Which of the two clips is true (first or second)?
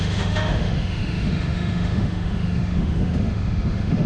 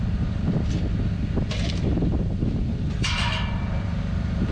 second